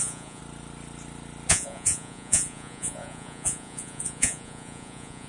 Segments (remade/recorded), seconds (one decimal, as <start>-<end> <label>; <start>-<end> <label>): 0.0-0.4 remade; 0.4-1.5 recorded; 1.5-5.3 remade

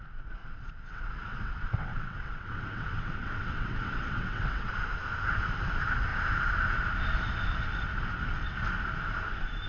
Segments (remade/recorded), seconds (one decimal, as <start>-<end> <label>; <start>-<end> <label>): 0.0-0.4 recorded; 0.4-4.7 remade; 4.7-9.7 recorded

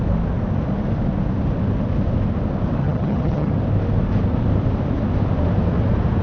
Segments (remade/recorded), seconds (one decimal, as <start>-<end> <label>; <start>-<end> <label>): 0.0-2.8 recorded; 2.8-3.5 remade; 3.5-6.2 recorded

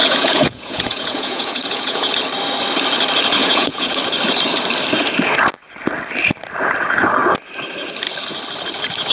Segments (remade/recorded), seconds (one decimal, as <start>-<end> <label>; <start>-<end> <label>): 0.0-2.1 remade; 2.1-3.4 recorded; 3.4-4.0 remade; 4.0-9.1 recorded